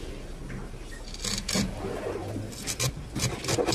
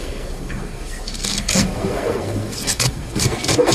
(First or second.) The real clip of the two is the first